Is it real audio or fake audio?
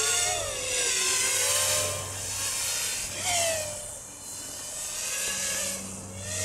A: real